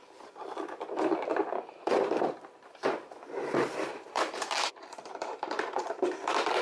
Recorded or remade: remade